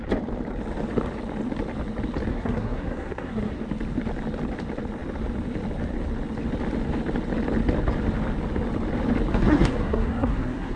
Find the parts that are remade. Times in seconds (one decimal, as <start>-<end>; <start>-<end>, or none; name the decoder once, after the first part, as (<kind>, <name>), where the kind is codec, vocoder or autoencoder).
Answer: 2.3-3.6 (codec, SNAC); 9.3-10.8